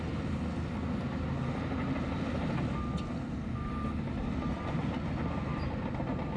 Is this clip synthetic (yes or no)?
no